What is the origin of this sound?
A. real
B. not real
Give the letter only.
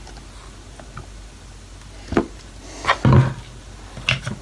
A